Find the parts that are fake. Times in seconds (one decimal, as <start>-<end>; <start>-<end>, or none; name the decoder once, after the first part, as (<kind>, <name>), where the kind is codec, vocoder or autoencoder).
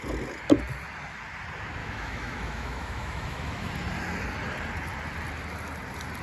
1.8-3.7 (autoencoder, DAC-VAE)